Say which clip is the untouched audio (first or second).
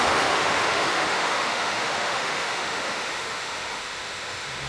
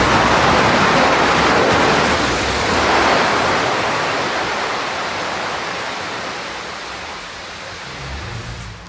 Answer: second